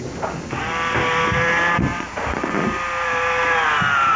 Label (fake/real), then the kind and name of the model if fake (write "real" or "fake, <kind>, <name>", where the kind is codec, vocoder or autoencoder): real